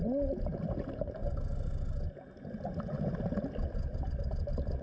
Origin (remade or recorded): recorded